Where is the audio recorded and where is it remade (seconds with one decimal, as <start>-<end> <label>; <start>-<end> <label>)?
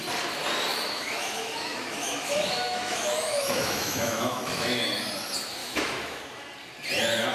0.0-0.7 recorded; 0.7-5.1 remade; 5.1-5.6 recorded; 5.6-6.2 remade; 6.2-7.3 recorded